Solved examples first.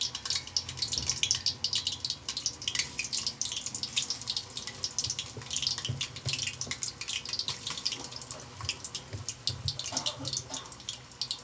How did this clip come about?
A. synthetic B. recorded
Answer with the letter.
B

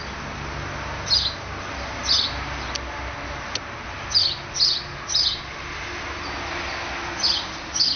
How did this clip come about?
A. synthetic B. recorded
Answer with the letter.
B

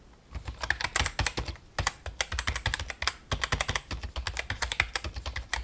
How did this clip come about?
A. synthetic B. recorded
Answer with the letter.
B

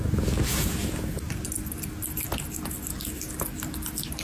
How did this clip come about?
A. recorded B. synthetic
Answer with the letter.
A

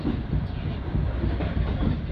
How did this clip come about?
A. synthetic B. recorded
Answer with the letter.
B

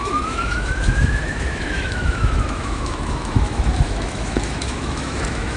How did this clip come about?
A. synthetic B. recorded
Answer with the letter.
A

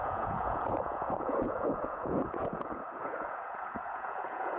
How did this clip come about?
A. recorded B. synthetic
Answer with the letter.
B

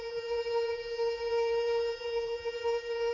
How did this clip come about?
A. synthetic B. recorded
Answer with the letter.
A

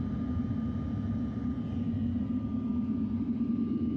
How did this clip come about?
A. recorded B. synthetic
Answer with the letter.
A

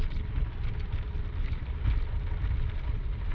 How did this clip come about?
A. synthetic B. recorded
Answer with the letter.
B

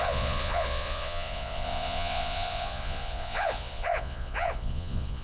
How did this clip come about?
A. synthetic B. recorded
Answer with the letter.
A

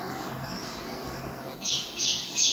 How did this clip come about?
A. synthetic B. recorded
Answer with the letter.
A